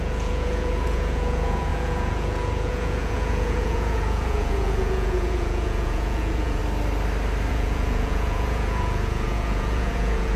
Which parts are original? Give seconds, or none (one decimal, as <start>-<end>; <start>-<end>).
6.6-7.5